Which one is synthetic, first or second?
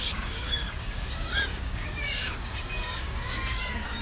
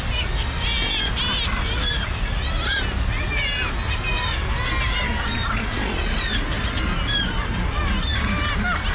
first